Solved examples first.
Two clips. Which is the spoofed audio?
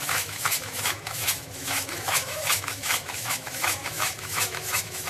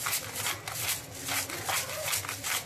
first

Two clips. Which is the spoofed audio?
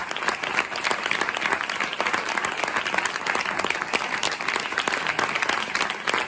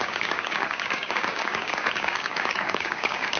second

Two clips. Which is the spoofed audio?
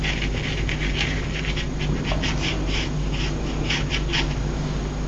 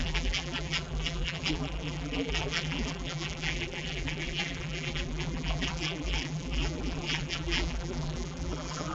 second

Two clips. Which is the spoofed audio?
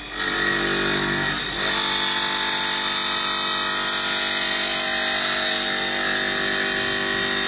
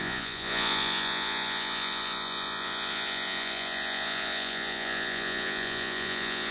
second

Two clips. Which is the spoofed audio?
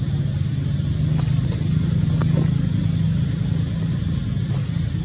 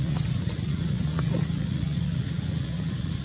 second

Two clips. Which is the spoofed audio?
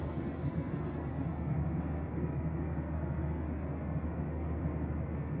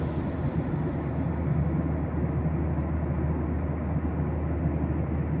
first